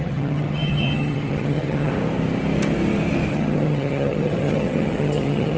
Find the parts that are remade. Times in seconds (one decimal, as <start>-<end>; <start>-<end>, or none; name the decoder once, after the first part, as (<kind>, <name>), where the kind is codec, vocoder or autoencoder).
0.0-1.9 (vocoder, HiFi-GAN); 3.3-5.6